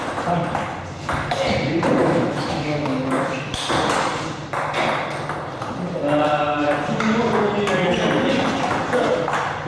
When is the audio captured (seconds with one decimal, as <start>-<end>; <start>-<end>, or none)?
0.0-2.0; 3.6-9.7